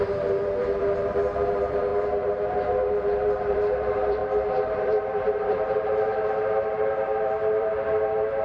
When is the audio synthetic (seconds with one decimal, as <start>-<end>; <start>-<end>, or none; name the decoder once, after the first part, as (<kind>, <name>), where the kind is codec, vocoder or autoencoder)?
0.0-8.4 (vocoder, BigVGAN v2)